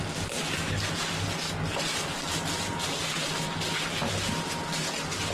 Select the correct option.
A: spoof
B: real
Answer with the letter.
B